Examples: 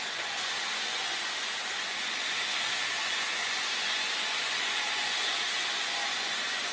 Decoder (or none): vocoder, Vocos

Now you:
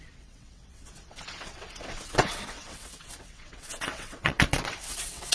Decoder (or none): vocoder, WaveNeXt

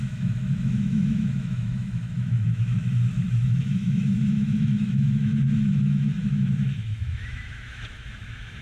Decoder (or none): autoencoder, DAC-VAE